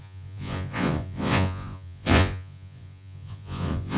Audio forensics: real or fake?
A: fake